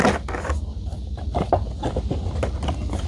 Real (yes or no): yes